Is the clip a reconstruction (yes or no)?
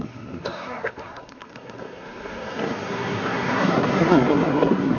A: yes